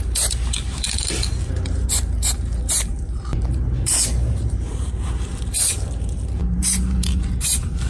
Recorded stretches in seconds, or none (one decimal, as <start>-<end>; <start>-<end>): none